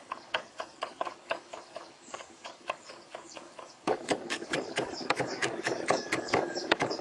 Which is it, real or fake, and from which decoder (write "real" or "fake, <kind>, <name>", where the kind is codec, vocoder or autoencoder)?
fake, codec, DAC